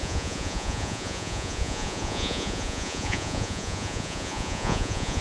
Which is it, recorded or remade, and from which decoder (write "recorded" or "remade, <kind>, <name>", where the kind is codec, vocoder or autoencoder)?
remade, vocoder, Vocos